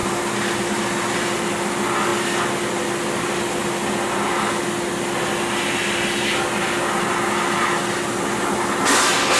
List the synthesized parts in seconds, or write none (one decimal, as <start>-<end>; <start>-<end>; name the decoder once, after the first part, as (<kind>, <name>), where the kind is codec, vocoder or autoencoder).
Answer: 0.0-1.4 (vocoder, BigVGAN v2)